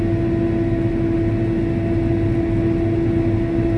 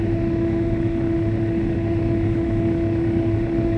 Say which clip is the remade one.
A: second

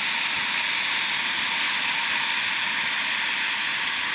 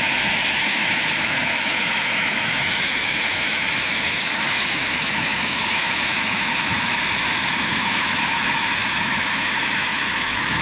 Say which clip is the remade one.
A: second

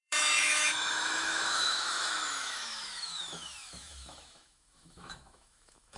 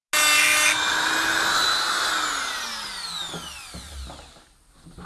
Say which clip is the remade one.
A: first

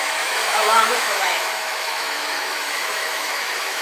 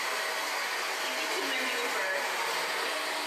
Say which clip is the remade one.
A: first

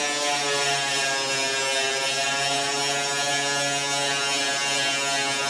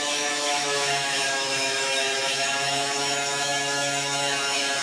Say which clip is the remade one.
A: second